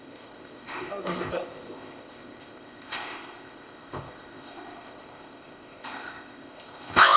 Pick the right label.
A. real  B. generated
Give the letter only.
B